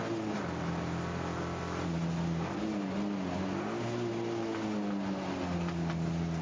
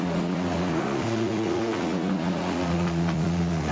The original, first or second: first